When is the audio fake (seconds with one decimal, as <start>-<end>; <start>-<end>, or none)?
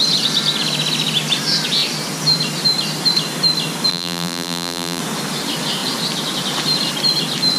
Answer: 3.9-5.0